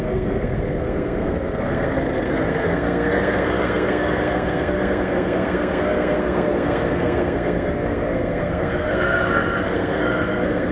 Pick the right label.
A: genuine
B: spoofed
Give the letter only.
B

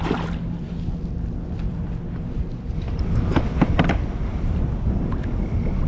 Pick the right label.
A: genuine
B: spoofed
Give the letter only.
A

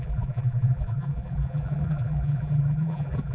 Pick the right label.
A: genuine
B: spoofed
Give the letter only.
B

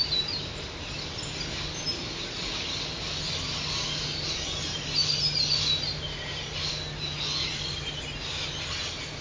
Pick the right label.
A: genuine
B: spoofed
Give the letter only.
A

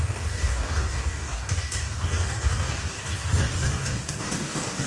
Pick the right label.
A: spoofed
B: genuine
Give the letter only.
A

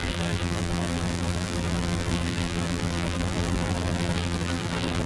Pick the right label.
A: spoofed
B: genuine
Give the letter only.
A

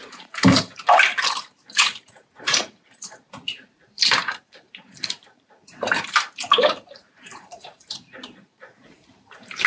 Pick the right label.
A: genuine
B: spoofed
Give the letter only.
B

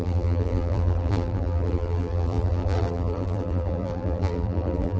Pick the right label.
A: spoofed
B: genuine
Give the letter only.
A